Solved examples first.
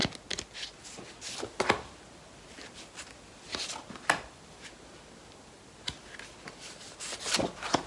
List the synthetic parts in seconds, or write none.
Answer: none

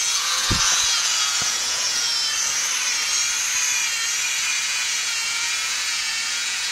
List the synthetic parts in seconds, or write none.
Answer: 0.0-2.1 (vocoder, Vocos); 4.7-6.7